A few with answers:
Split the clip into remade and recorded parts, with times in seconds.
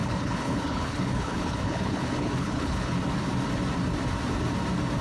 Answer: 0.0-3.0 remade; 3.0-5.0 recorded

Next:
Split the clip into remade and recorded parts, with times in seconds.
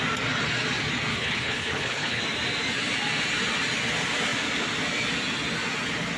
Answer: 0.0-1.1 recorded; 1.1-2.2 remade; 2.2-6.2 recorded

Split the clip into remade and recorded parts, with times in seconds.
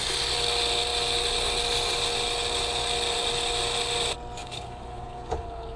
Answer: 0.0-4.4 recorded; 4.4-5.8 remade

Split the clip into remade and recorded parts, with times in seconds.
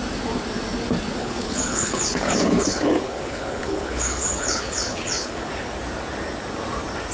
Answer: 0.0-1.2 recorded; 1.2-5.5 remade; 5.5-7.1 recorded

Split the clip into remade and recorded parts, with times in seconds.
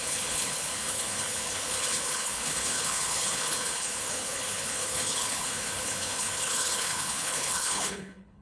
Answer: 0.0-8.4 remade